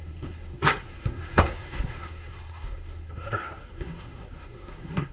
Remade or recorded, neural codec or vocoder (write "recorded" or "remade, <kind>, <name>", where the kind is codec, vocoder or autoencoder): remade, codec, SNAC